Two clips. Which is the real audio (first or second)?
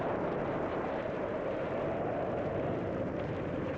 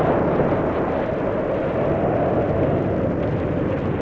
second